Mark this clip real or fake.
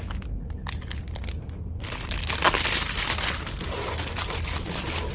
real